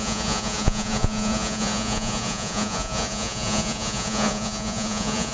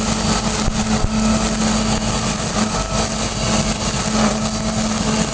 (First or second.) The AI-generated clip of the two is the first